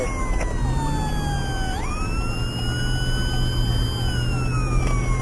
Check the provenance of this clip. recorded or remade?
recorded